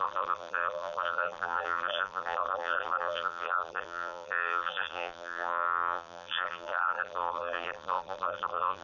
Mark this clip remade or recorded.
remade